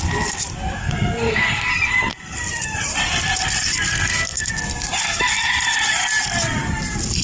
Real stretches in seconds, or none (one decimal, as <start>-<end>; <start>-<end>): 0.0-0.8; 1.7-3.9; 4.5-7.2